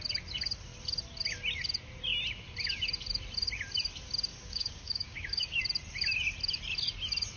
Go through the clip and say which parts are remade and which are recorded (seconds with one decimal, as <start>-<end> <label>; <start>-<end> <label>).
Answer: 0.0-4.3 recorded; 4.3-5.6 remade; 5.6-7.4 recorded